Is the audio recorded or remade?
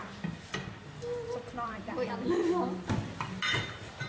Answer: recorded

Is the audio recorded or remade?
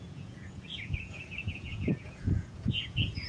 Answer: remade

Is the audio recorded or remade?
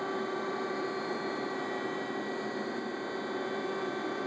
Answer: recorded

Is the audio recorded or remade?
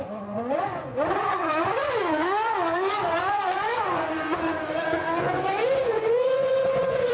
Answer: remade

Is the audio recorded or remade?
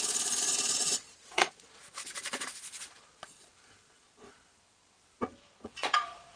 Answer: remade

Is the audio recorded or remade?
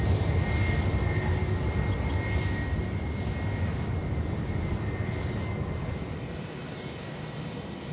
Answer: recorded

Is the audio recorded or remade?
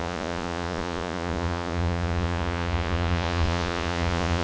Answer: remade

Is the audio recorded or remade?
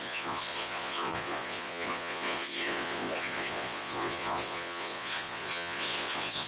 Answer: remade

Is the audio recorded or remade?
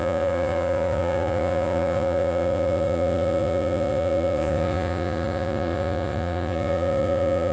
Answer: remade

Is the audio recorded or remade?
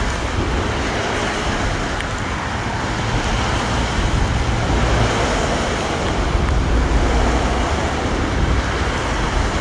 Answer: recorded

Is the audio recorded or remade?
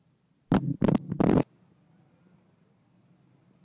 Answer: recorded